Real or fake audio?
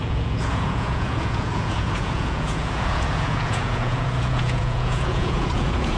fake